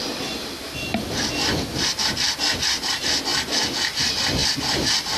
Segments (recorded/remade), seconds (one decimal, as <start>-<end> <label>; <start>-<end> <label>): 0.0-5.2 recorded